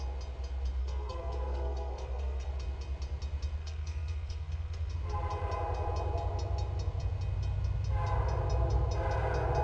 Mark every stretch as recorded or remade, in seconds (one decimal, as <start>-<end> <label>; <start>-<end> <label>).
0.0-0.8 recorded; 0.8-2.5 remade; 2.5-3.6 recorded; 3.6-4.9 remade; 4.9-9.6 recorded